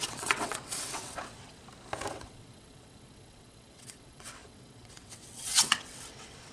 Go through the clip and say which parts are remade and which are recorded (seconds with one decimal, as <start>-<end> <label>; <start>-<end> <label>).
0.0-1.6 remade; 1.6-2.1 recorded; 2.1-6.5 remade